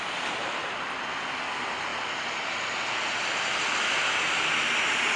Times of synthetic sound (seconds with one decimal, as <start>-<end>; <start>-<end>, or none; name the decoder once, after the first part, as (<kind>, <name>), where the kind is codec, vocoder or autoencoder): none